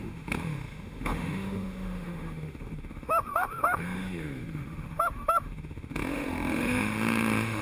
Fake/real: fake